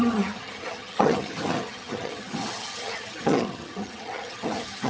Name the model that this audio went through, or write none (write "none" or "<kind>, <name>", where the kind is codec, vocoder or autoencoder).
vocoder, HiFi-GAN